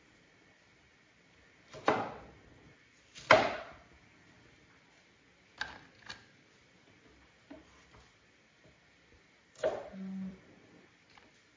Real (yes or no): yes